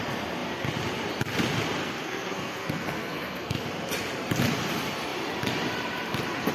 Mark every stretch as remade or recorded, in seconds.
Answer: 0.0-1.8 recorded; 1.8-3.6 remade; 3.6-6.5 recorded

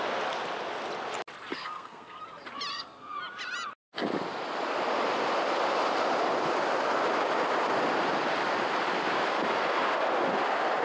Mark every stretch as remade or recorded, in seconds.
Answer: 0.0-1.5 recorded; 1.5-2.2 remade; 2.2-2.7 recorded; 2.7-3.2 remade; 3.2-10.8 recorded

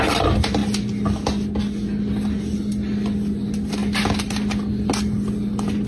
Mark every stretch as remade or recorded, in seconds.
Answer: 0.0-5.9 recorded

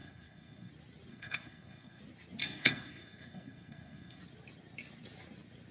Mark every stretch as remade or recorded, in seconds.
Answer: 0.0-0.7 remade; 0.7-1.1 recorded; 1.1-2.0 remade; 2.0-2.4 recorded; 2.4-4.2 remade; 4.2-5.7 recorded